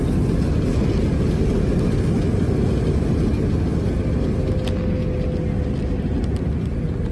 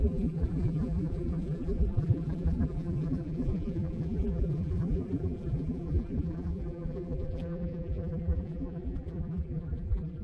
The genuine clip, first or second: first